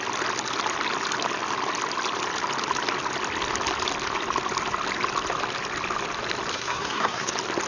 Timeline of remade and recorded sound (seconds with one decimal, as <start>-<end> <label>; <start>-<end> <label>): 0.0-6.5 recorded; 6.5-7.3 remade; 7.3-7.7 recorded